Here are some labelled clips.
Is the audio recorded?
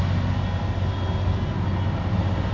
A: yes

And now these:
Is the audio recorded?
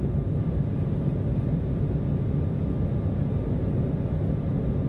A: yes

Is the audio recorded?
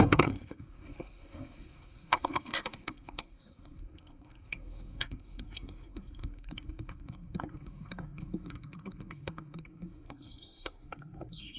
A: no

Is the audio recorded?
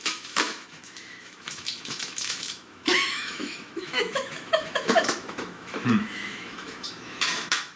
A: no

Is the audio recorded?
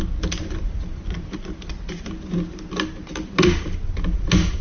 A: yes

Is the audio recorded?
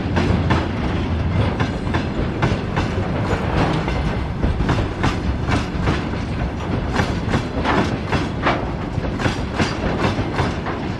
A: yes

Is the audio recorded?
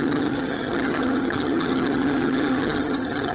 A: no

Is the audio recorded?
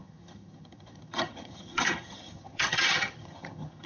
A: no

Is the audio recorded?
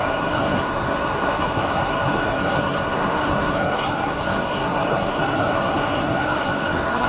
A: no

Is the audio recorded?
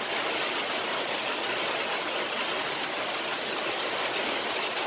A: yes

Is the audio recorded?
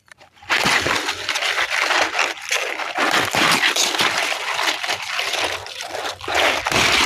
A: yes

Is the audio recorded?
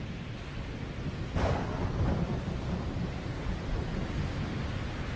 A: yes